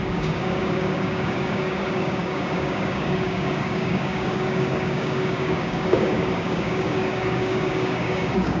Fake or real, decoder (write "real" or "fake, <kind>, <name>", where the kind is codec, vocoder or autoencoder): fake, codec, DAC